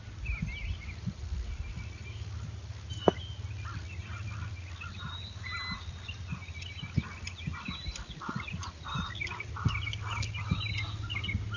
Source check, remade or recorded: recorded